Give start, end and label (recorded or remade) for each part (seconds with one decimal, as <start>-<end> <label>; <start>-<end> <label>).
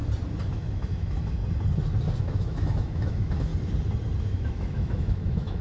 0.0-0.5 recorded; 0.5-1.4 remade; 1.4-2.2 recorded; 2.2-3.5 remade; 3.5-4.2 recorded; 4.2-5.6 remade